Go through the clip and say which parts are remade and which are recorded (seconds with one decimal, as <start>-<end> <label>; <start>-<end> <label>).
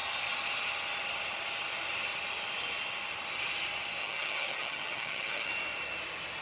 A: 0.0-4.0 recorded; 4.0-5.5 remade; 5.5-6.4 recorded